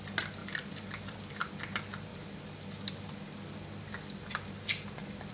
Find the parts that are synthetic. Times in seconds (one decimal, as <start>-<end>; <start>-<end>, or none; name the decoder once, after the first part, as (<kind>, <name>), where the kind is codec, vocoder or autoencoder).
0.4-1.5 (vocoder, BigVGAN v2); 2.1-5.3